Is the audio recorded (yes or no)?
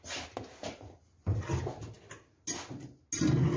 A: yes